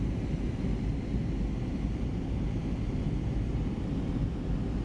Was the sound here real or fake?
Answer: real